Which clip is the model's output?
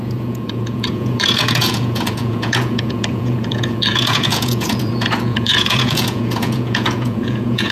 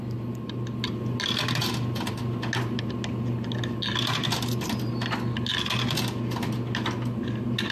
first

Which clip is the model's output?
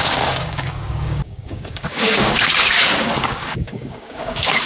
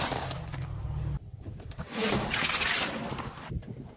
first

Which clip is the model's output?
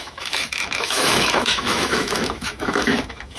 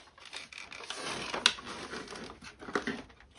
first